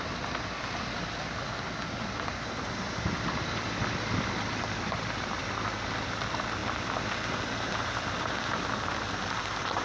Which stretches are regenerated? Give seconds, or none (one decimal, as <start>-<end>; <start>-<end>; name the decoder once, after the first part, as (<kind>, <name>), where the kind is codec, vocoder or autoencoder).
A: none

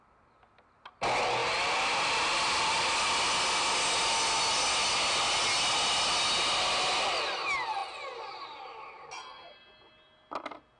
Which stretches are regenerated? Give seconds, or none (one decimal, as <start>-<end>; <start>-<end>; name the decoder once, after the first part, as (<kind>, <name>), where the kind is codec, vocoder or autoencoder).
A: none